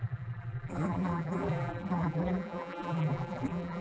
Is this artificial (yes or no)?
yes